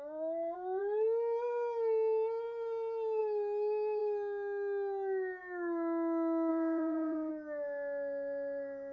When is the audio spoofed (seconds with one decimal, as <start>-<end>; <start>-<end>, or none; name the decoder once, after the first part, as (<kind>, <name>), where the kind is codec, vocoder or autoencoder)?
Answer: 6.5-7.3 (vocoder, BigVGAN v2)